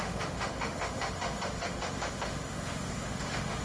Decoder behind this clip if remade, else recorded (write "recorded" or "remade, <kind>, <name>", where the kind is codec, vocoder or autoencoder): remade, autoencoder, DAC-VAE